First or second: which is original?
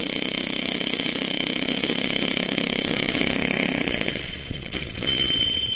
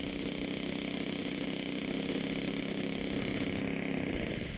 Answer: second